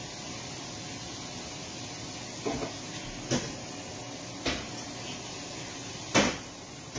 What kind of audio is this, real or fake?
real